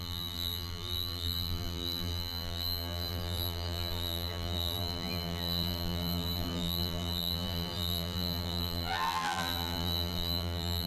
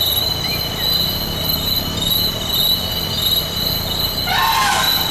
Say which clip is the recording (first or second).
second